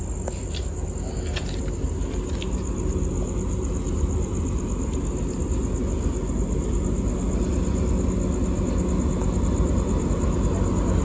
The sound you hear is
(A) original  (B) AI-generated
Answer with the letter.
A